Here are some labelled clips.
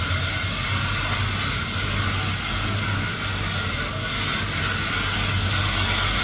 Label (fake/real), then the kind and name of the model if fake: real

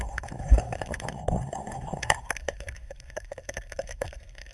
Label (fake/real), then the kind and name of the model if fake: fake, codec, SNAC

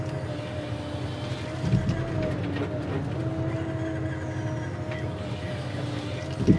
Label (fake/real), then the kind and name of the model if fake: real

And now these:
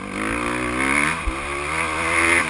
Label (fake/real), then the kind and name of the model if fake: real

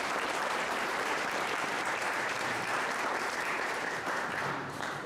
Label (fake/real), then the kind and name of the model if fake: fake, vocoder, BigVGAN v2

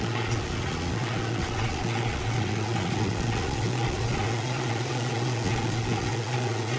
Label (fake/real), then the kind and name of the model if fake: fake, vocoder, Vocos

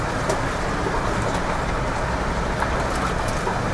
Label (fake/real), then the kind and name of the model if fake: real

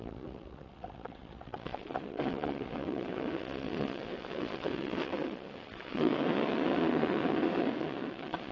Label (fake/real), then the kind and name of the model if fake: fake, vocoder, WaveNeXt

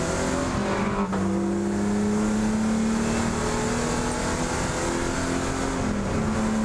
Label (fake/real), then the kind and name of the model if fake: real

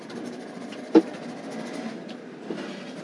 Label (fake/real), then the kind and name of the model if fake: real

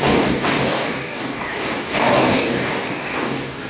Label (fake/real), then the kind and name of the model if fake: fake, codec, DAC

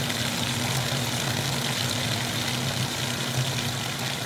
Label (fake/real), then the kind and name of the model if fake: real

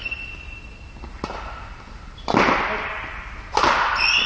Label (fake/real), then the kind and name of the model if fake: real